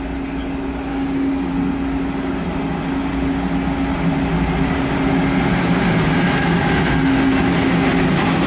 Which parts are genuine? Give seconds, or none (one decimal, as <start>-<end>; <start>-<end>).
0.0-0.9; 1.5-8.5